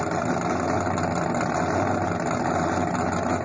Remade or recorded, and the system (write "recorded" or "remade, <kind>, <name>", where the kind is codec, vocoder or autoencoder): recorded